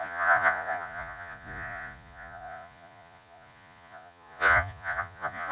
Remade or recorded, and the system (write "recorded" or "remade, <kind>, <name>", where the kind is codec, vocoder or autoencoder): remade, vocoder, Vocos